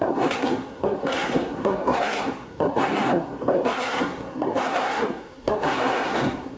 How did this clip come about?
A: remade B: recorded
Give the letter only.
A